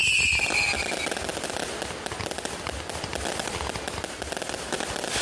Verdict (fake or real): real